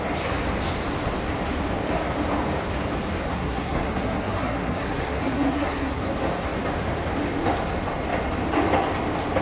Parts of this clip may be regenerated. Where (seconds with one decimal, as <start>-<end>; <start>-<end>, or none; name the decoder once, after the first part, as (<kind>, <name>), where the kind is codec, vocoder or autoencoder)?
3.3-6.0 (codec, SNAC)